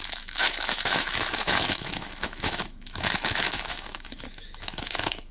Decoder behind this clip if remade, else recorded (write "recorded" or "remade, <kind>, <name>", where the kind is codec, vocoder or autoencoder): remade, autoencoder, DAC-VAE